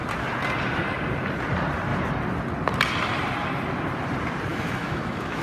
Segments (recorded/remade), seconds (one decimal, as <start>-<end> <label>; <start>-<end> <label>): 0.0-4.5 recorded; 4.5-5.4 remade